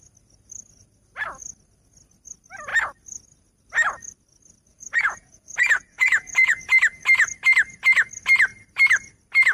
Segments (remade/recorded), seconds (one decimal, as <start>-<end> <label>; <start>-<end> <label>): 0.0-4.7 recorded; 4.7-6.6 remade; 6.6-9.5 recorded

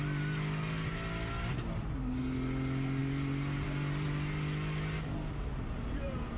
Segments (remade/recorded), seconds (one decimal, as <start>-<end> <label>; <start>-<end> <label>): 0.0-6.4 recorded